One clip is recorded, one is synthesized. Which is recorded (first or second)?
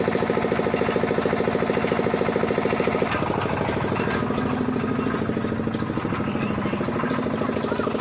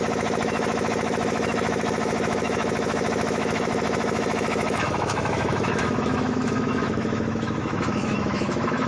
first